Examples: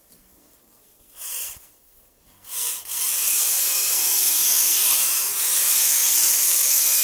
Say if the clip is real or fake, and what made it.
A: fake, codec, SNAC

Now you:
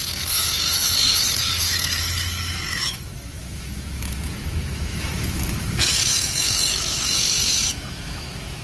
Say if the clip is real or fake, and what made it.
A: fake, autoencoder, DAC-VAE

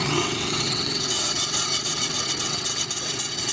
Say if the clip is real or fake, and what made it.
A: fake, vocoder, WaveNeXt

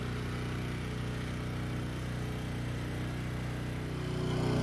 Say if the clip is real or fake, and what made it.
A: real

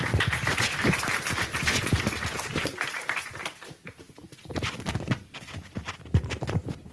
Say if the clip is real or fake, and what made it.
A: real